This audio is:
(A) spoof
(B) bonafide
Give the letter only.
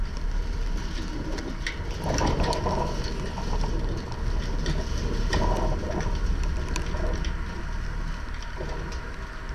B